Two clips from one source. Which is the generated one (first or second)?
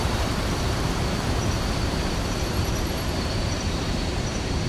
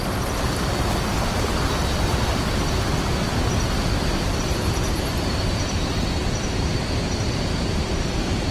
first